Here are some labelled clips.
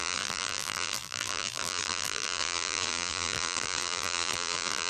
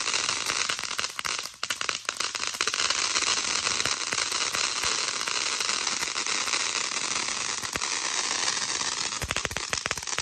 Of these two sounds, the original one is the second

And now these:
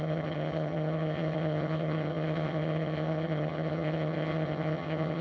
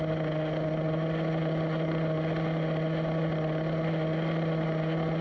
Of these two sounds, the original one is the second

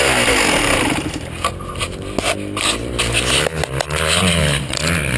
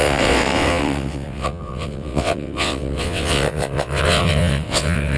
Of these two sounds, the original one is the first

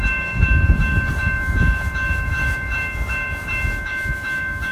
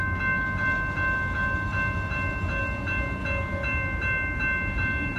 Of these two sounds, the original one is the second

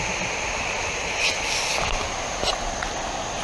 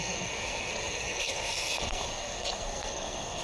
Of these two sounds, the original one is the first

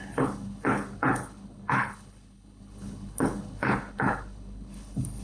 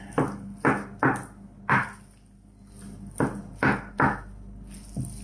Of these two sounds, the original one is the second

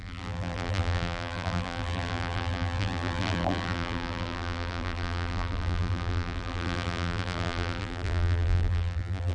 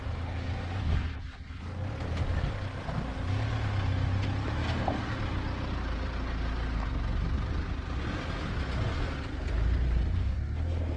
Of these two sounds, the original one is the second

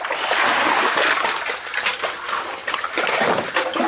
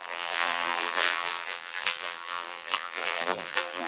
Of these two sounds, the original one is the first